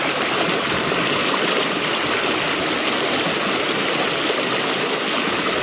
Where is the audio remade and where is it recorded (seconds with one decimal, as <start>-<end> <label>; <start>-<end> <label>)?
0.0-5.6 recorded